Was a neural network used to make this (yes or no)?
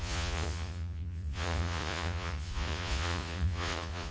yes